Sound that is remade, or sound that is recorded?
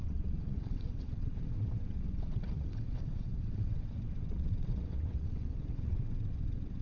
remade